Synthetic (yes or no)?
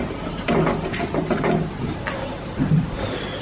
no